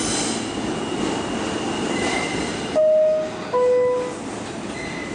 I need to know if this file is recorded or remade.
recorded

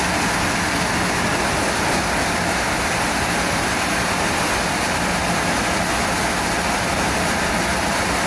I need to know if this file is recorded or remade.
recorded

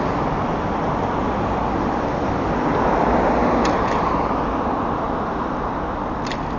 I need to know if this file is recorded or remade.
recorded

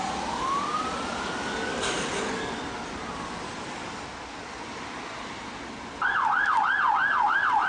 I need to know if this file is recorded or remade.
recorded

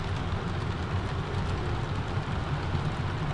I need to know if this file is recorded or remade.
recorded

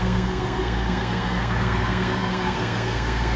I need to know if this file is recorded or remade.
remade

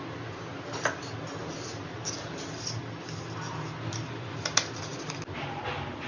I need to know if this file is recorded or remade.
recorded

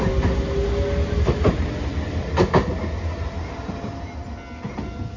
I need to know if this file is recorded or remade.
recorded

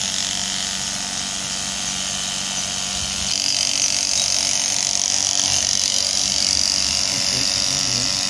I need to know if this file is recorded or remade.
recorded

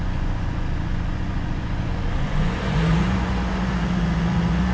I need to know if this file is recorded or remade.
remade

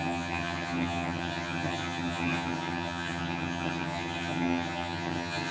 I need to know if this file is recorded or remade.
remade